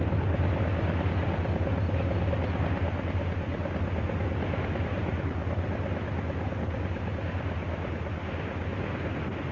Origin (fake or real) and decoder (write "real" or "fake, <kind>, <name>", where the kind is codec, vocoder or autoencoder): real